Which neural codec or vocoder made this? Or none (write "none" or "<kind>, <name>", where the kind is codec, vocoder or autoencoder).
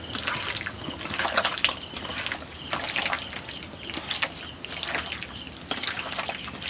none